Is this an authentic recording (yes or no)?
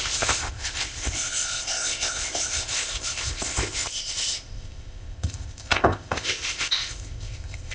no